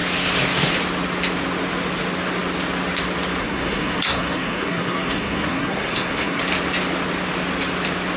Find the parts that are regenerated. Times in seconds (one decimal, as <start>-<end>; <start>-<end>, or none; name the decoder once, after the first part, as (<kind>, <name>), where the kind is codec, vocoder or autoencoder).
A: 3.4-6.4 (codec, SNAC)